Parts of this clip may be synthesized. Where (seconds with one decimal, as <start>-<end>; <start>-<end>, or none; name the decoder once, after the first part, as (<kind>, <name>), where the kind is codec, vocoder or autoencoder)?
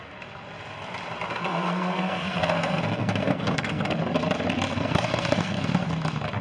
1.3-4.0 (codec, SNAC); 4.7-5.9